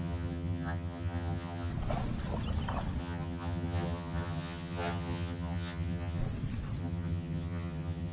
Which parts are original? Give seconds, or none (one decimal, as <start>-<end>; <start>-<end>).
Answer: 1.7-3.0; 6.2-6.8